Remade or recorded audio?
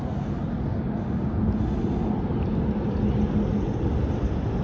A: recorded